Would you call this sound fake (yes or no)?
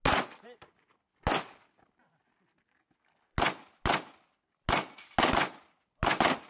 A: no